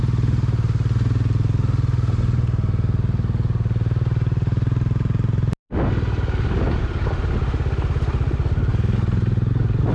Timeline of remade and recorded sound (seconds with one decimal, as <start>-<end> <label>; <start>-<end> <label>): 0.0-9.9 recorded